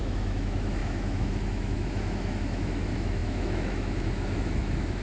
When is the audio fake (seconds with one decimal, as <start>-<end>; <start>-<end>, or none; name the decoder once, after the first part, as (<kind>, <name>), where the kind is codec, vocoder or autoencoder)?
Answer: 0.0-5.0 (autoencoder, DAC-VAE)